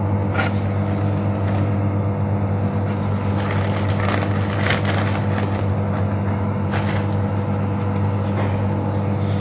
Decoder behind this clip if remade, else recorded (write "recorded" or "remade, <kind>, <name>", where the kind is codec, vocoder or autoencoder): recorded